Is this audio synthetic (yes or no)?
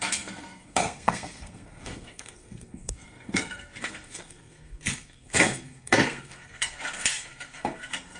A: yes